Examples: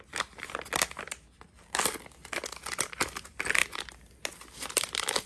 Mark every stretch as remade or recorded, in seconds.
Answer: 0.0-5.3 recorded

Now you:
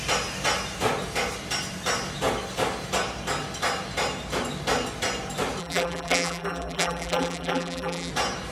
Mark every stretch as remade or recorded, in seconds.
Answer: 0.0-5.6 recorded; 5.6-8.1 remade; 8.1-8.5 recorded

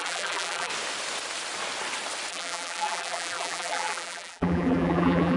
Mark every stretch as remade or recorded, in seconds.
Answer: 0.0-0.7 remade; 0.7-2.3 recorded; 2.3-5.4 remade

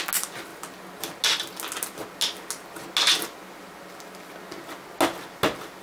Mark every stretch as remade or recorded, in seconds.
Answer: 0.0-5.8 recorded